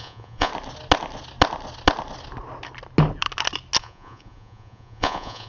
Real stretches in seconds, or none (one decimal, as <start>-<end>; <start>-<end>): 0.5-3.8

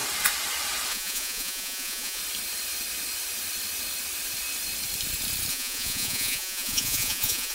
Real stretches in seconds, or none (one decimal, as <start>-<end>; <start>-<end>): 0.0-0.9; 2.2-5.5

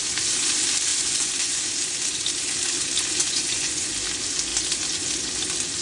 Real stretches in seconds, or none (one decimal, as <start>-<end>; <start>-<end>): 0.0-0.9; 1.6-3.2; 3.9-5.8

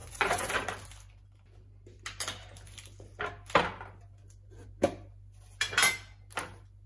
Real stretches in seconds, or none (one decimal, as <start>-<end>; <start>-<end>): 0.5-6.9

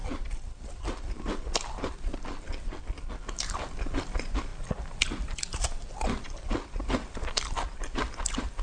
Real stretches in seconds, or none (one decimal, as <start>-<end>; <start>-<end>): 0.0-8.6

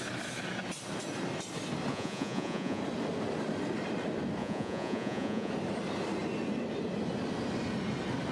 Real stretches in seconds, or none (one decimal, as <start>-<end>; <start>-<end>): 0.0-1.9; 2.8-4.4; 5.5-8.3

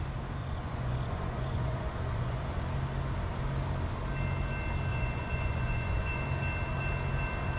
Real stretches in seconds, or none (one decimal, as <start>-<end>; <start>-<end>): 0.0-0.4; 2.4-4.9; 6.2-7.6